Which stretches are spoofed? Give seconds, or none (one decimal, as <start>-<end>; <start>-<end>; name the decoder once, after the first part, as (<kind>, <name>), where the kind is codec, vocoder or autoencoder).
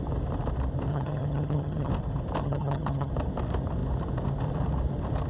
0.9-1.9 (vocoder, HiFi-GAN); 2.4-3.1